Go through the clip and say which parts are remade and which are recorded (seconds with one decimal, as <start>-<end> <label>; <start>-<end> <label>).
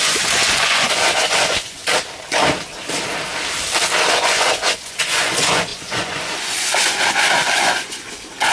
0.0-1.8 remade; 1.8-4.1 recorded; 4.1-8.5 remade